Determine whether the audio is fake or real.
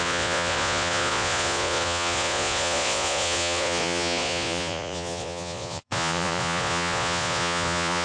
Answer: fake